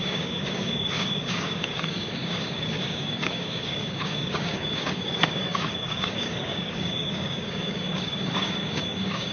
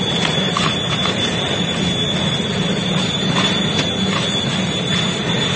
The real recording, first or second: second